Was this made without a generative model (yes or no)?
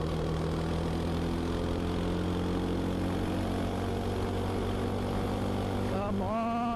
yes